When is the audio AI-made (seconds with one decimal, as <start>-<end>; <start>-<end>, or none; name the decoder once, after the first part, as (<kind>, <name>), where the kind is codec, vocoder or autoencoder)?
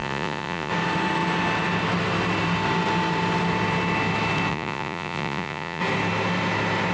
0.0-0.7 (vocoder, Vocos); 4.5-5.8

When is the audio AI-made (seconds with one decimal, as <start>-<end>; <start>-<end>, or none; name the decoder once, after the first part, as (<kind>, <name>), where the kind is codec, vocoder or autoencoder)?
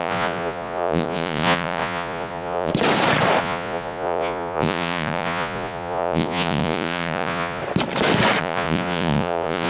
0.0-2.7 (vocoder, Vocos); 3.4-7.6; 8.4-9.7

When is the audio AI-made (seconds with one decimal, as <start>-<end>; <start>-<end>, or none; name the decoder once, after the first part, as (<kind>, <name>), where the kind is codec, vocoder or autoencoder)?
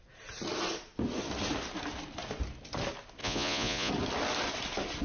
3.2-3.9 (vocoder, Vocos)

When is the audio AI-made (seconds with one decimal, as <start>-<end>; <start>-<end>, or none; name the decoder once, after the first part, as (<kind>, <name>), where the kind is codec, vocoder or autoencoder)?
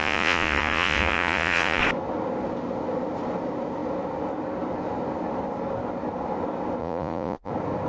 0.0-1.8 (vocoder, Vocos); 6.8-7.5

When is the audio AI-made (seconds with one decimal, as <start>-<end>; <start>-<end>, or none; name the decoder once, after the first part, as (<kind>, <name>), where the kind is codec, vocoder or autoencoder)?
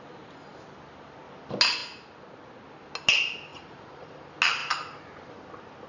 3.5-4.1 (vocoder, Vocos)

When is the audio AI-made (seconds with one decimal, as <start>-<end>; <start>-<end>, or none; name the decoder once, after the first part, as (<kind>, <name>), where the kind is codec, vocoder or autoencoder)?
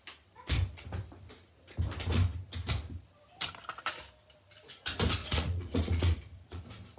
5.2-6.6 (vocoder, Vocos)